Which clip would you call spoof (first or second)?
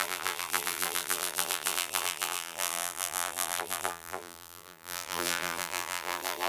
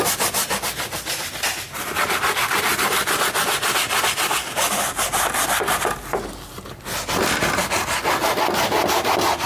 first